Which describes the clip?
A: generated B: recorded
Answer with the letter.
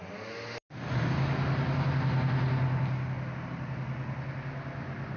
B